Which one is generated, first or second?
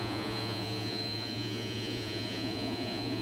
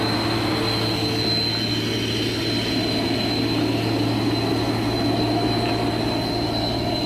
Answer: first